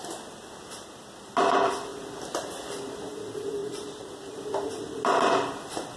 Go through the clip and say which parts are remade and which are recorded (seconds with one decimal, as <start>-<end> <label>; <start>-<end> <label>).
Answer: 0.0-3.6 recorded; 3.6-4.2 remade; 4.2-6.0 recorded